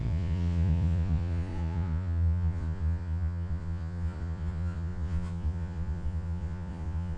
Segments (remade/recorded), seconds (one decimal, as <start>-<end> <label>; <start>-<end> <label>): 0.0-7.2 remade